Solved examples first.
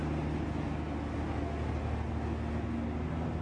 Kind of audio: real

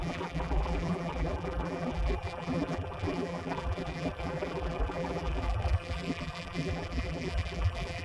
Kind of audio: fake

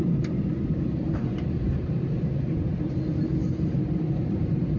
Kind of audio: fake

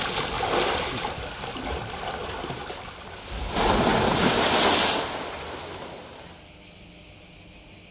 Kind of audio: real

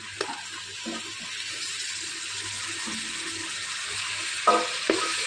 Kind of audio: real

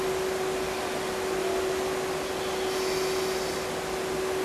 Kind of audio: real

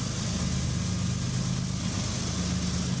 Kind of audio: real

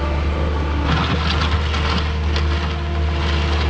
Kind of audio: real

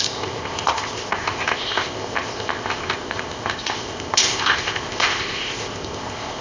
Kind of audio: fake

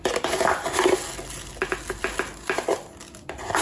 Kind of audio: real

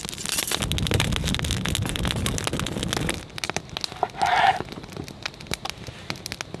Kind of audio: real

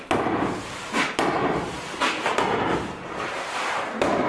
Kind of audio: real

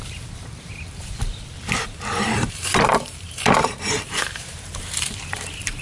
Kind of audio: fake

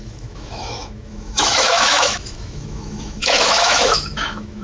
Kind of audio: fake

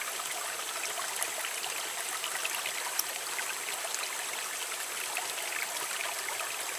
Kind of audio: real